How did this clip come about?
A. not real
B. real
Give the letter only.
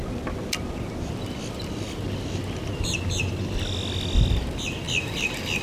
B